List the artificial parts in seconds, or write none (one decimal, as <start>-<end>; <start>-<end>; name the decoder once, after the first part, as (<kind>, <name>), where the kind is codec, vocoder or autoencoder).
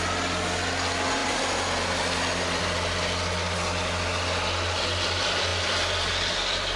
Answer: none